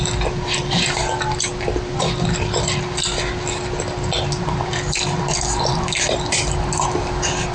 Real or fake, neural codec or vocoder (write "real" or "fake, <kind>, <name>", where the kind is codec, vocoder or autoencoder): real